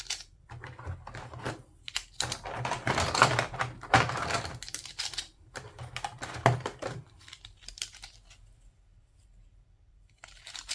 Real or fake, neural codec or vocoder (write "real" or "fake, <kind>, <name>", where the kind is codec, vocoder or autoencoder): fake, vocoder, BigVGAN v2